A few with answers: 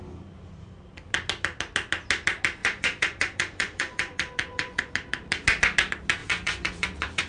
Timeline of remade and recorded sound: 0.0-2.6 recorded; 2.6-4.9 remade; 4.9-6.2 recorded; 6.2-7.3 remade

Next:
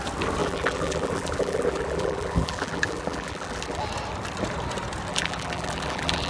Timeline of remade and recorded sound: 0.0-0.4 recorded; 0.4-3.8 remade; 3.8-5.1 recorded; 5.1-6.3 remade

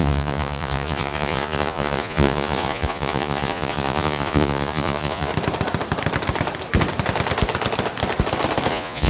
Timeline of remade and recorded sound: 0.0-5.3 remade; 5.3-8.7 recorded; 8.7-9.1 remade

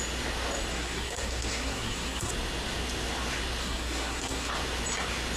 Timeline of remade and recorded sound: 0.0-0.7 recorded; 0.7-2.3 remade; 2.3-3.6 recorded; 3.6-4.5 remade; 4.5-5.4 recorded

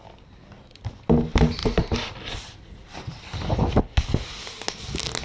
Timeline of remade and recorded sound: 0.0-1.6 recorded; 1.6-3.8 remade; 3.8-5.2 recorded

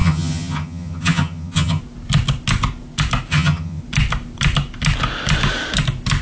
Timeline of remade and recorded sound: 0.0-1.8 remade; 1.8-3.3 recorded; 3.3-3.8 remade; 3.8-6.2 recorded